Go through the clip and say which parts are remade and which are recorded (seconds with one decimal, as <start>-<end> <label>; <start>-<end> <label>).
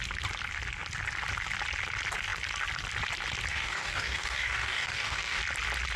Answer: 0.0-3.5 recorded; 3.5-5.4 remade; 5.4-6.0 recorded